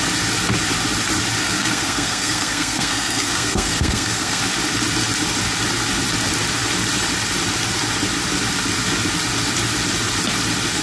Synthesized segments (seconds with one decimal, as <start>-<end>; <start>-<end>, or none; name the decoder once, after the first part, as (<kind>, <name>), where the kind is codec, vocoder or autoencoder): 1.4-4.4 (codec, SNAC)